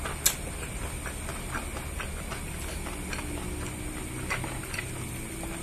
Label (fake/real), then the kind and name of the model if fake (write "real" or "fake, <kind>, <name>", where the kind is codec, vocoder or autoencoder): real